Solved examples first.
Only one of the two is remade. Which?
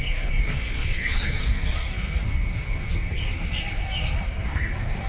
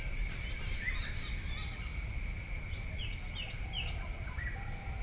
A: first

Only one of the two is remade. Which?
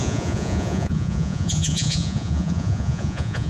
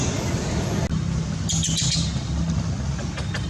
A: first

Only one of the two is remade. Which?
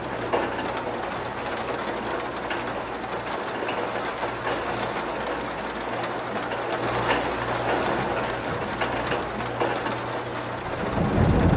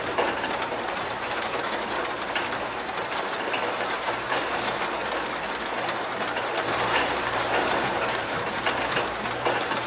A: second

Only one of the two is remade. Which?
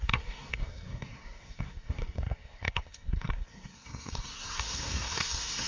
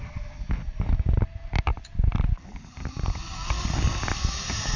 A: first